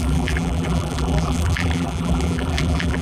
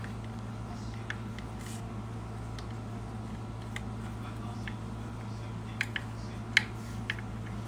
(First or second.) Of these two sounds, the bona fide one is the second